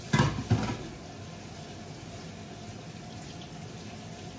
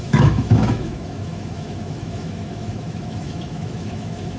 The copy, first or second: second